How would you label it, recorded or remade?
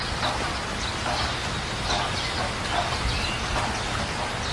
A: recorded